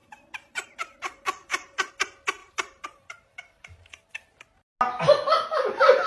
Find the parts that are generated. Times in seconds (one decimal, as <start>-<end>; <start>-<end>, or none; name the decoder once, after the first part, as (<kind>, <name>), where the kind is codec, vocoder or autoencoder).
0.0-1.9 (vocoder, BigVGAN v2); 2.4-4.1